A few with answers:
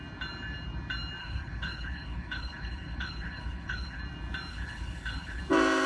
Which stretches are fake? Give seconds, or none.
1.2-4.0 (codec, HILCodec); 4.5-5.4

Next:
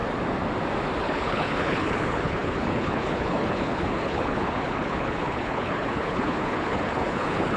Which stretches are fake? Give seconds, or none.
1.0-7.6 (codec, HILCodec)

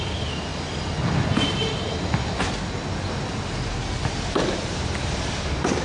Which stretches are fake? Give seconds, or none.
none

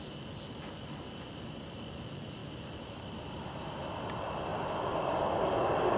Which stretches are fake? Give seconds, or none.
none